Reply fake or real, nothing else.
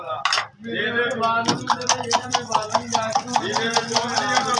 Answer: real